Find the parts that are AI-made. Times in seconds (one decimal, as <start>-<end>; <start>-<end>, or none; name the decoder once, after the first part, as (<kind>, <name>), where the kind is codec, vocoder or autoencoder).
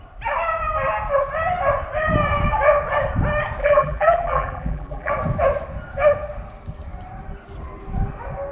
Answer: 3.6-5.1 (vocoder, BigVGAN v2)